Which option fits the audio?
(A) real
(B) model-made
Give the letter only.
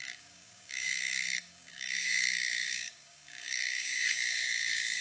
B